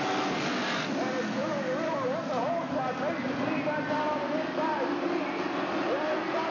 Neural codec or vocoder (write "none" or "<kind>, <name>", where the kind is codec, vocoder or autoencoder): none